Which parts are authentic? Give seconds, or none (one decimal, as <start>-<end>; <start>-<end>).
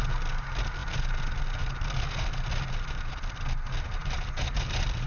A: 0.0-4.0